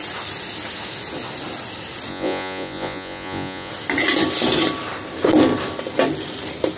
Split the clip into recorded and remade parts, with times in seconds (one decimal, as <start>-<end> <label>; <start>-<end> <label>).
0.0-2.1 recorded; 2.1-3.7 remade; 3.7-6.8 recorded